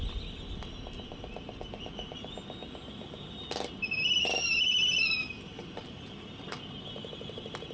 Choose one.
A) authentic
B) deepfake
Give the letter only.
A